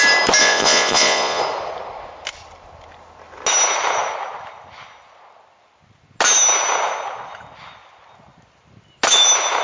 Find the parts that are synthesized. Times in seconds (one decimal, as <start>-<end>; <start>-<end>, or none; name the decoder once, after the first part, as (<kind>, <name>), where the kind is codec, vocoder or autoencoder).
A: 0.4-1.4 (vocoder, Vocos)